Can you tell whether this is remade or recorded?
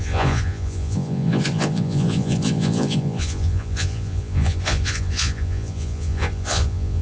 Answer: remade